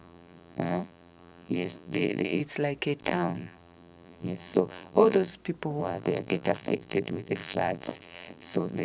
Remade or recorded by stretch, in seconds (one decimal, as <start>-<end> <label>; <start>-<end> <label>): 0.0-2.4 remade; 2.4-3.0 recorded; 3.0-5.3 remade; 5.3-5.8 recorded; 5.8-8.8 remade